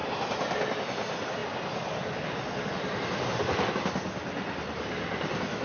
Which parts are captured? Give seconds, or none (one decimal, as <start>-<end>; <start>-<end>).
0.0-5.6